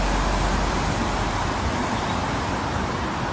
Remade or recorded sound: recorded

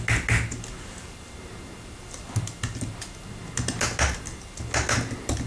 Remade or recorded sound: recorded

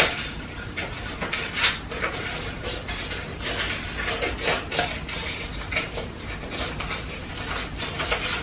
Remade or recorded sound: recorded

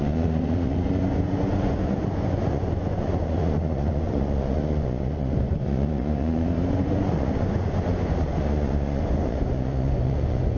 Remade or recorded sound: remade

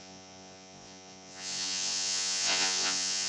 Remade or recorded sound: remade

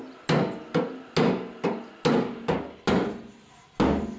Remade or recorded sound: recorded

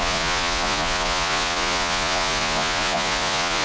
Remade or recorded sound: remade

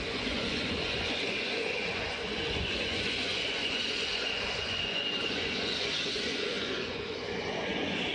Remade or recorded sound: remade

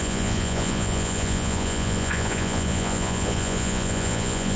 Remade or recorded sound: remade